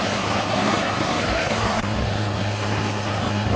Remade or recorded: remade